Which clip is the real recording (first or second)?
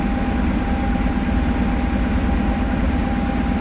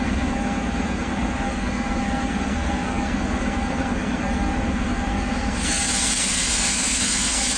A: first